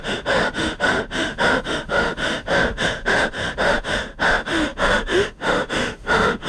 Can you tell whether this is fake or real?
fake